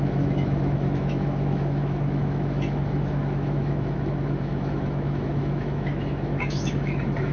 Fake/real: fake